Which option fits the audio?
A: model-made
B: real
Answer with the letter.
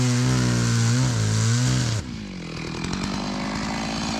B